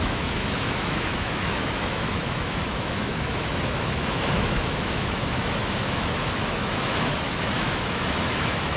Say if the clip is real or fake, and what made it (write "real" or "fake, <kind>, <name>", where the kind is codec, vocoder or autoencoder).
fake, autoencoder, DAC-VAE